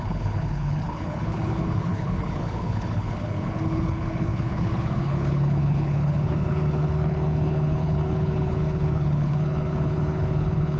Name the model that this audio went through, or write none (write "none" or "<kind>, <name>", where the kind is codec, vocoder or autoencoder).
codec, HILCodec